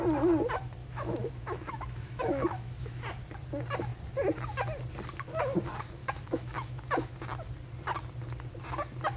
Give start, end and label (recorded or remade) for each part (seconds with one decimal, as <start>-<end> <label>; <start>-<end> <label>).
0.0-0.8 recorded; 0.8-3.0 remade; 3.0-6.0 recorded; 6.0-7.1 remade; 7.1-9.2 recorded